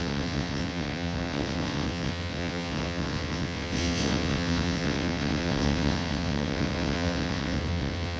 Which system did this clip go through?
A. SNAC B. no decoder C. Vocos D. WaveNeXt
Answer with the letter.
D